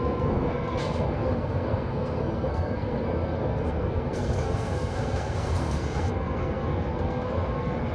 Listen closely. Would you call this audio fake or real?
fake